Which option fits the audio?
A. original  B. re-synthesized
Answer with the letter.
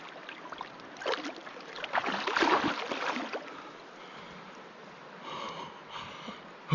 A